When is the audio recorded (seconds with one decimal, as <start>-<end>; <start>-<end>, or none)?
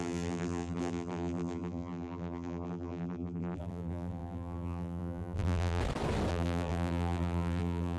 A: 5.8-6.3